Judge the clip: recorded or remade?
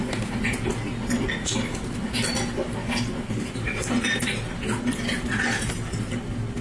recorded